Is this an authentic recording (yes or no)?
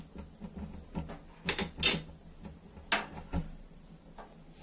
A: yes